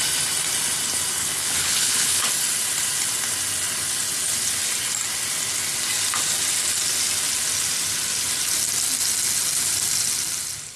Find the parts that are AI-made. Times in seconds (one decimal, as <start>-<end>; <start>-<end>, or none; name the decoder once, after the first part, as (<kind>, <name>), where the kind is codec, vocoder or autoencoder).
1.2-2.3 (codec, HILCodec)